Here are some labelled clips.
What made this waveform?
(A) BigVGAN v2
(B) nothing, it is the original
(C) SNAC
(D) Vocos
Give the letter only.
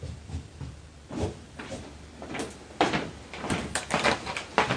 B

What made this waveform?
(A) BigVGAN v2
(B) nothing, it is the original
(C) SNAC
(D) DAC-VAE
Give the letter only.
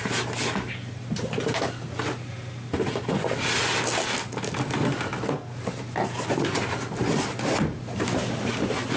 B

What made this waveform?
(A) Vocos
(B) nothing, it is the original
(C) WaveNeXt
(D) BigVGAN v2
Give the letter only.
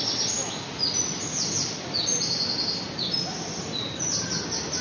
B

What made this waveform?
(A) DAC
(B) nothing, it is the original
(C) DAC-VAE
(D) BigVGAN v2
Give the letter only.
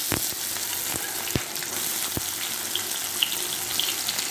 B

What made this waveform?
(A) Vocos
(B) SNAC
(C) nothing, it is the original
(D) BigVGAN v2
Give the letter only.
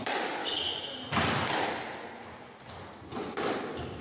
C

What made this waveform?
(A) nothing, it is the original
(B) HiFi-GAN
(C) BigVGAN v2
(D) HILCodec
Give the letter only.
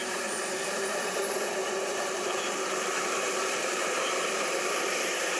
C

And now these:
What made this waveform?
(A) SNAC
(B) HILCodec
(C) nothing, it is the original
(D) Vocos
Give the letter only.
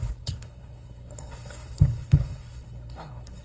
B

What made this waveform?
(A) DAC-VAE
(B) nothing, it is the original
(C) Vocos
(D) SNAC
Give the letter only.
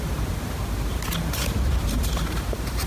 B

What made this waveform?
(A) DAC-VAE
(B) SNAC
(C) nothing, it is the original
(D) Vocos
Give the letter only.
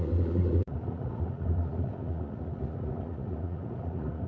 D